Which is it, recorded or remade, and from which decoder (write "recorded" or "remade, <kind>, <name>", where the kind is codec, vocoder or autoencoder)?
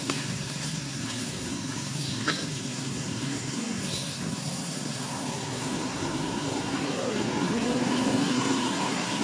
remade, codec, SNAC